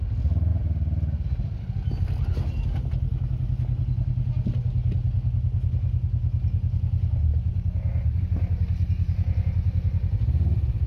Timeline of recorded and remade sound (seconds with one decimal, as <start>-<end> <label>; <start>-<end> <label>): 0.0-10.9 recorded

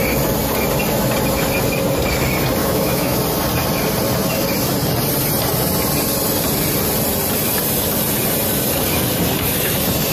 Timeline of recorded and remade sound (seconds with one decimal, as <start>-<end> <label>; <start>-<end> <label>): 0.0-2.6 recorded; 2.6-3.2 remade; 3.2-10.1 recorded

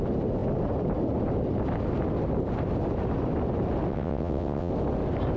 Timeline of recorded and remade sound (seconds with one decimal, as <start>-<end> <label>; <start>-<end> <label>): 0.0-3.9 recorded; 3.9-4.7 remade; 4.7-5.4 recorded